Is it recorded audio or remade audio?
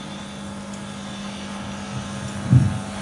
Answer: recorded